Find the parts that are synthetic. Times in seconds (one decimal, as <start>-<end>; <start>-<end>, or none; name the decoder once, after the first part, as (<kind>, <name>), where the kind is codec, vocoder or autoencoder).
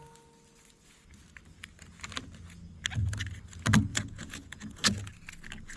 3.9-5.1 (vocoder, Vocos)